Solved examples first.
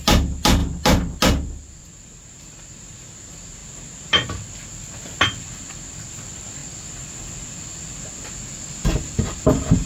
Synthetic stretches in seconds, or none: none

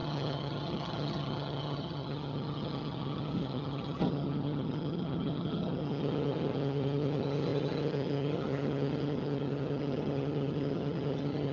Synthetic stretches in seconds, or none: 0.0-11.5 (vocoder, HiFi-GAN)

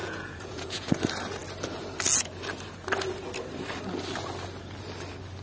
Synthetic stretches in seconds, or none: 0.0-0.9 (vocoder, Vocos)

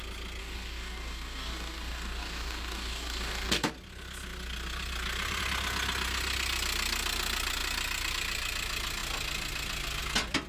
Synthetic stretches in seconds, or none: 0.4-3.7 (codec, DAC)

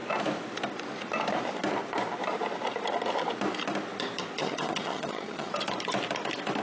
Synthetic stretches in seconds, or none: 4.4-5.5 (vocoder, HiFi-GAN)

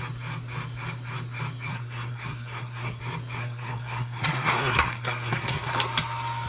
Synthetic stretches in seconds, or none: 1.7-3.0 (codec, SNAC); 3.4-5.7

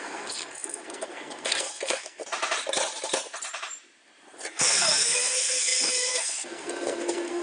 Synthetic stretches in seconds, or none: 0.0-2.2 (codec, SNAC); 4.5-7.4